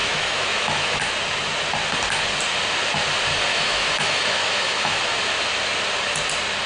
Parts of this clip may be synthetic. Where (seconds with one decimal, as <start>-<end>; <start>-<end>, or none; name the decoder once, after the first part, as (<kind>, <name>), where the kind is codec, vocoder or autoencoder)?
0.0-1.0 (autoencoder, DAC-VAE); 3.5-5.0